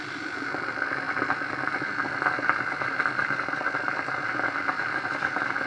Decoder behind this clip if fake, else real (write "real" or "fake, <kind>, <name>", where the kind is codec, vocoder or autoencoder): real